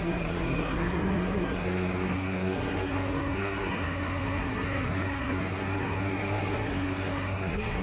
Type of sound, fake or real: fake